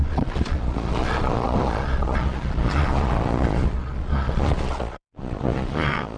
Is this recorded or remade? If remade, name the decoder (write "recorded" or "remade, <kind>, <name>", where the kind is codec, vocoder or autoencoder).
remade, vocoder, Vocos